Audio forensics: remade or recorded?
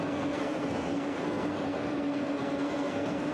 remade